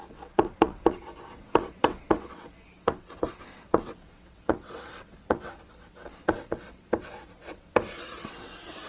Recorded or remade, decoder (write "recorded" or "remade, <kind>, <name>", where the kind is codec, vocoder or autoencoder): remade, vocoder, WaveNeXt